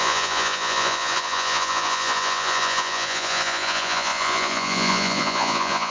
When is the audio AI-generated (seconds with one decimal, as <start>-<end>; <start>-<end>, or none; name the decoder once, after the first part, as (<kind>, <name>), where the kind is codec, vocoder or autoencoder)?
0.0-5.9 (vocoder, Vocos)